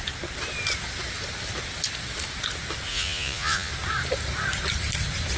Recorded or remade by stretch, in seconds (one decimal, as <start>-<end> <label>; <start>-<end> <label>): 0.0-2.9 recorded; 2.9-3.7 remade; 3.7-5.4 recorded